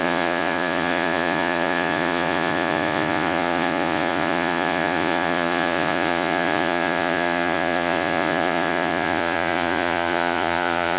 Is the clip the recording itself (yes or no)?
no